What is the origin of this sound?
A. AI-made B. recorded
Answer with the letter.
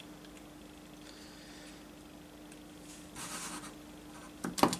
B